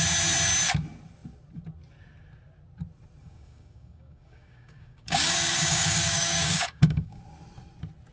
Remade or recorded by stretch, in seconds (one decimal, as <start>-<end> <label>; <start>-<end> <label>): 0.0-3.2 recorded; 3.2-7.2 remade; 7.2-8.1 recorded